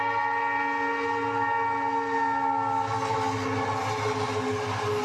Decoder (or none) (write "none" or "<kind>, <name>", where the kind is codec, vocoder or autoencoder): none